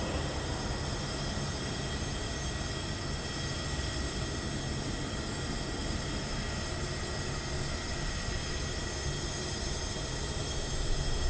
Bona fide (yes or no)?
yes